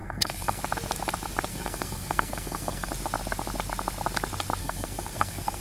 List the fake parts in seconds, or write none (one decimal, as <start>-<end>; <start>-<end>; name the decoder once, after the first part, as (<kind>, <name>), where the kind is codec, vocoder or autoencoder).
0.0-0.6 (codec, SNAC); 1.5-2.9; 4.6-5.6

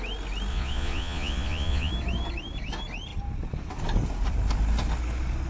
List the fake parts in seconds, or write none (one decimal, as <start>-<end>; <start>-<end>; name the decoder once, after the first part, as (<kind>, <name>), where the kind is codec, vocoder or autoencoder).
0.5-1.9 (vocoder, Vocos)

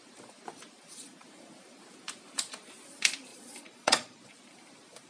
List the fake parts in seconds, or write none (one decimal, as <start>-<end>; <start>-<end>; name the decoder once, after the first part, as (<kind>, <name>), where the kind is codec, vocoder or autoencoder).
3.3-4.3 (vocoder, Vocos)

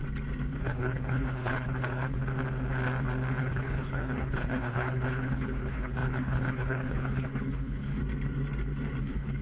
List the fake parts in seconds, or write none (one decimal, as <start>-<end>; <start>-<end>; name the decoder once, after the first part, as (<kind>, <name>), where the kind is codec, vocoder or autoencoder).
0.6-2.2 (codec, HILCodec); 3.4-8.0; 9.0-9.4

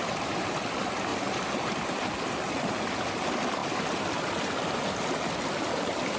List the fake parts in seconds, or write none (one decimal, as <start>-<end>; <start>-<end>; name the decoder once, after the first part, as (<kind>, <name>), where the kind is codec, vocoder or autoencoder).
none

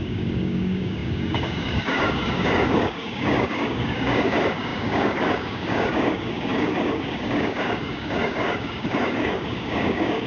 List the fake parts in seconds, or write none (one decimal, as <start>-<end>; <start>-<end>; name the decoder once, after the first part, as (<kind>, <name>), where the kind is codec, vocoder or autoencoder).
0.0-10.3 (codec, DAC)

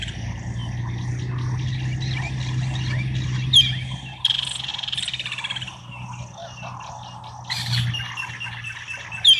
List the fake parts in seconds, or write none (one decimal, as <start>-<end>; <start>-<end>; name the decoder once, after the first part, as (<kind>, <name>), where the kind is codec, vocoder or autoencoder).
none

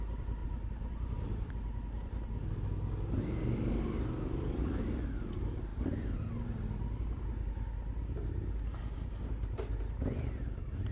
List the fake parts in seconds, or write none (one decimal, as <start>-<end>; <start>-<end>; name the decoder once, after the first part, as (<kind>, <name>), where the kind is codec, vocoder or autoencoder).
0.4-1.5 (vocoder, BigVGAN v2); 5.7-6.3